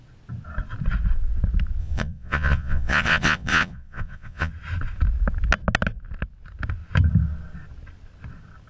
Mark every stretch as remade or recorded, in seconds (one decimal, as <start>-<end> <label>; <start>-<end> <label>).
0.0-1.8 recorded; 1.8-4.5 remade; 4.5-8.7 recorded